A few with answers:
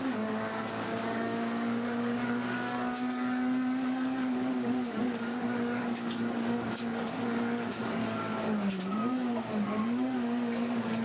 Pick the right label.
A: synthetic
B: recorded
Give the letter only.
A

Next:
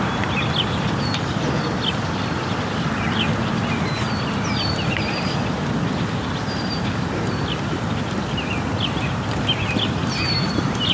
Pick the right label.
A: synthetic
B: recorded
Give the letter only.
B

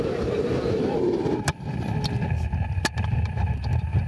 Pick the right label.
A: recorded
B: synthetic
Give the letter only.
A